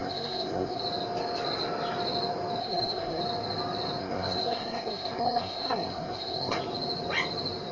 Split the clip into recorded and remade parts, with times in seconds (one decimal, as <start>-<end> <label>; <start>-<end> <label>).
0.0-0.8 remade; 0.8-2.6 recorded; 2.6-3.2 remade; 3.2-4.0 recorded; 4.0-6.6 remade; 6.6-7.7 recorded